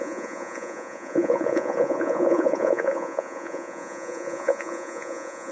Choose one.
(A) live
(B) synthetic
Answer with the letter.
B